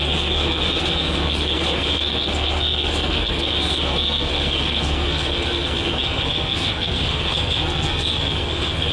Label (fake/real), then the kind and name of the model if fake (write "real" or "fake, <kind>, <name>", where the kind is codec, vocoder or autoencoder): fake, codec, SNAC